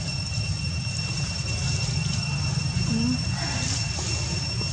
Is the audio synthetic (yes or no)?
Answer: no